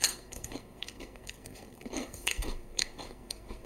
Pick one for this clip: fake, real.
fake